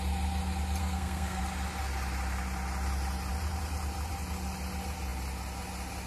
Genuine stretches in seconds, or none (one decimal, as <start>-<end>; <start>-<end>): 0.0-0.8; 1.4-6.1